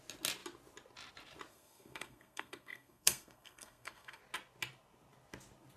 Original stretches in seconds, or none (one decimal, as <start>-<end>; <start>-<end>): 0.0-1.5; 4.2-5.8